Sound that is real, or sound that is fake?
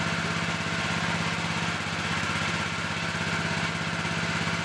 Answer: real